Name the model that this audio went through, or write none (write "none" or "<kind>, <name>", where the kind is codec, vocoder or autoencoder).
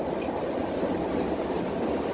none